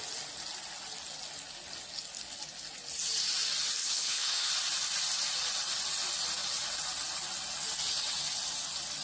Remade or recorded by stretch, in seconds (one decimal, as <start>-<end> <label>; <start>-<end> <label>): 0.0-3.8 recorded; 3.8-4.5 remade; 4.5-9.0 recorded